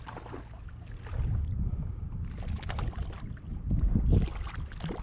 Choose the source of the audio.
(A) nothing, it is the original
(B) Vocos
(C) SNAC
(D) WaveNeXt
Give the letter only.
A